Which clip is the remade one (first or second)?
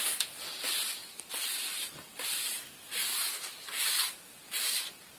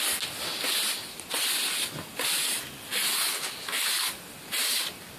first